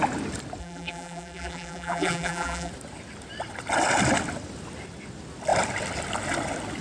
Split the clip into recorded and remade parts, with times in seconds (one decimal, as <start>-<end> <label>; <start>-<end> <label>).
0.0-0.6 recorded; 0.6-2.7 remade; 2.7-6.8 recorded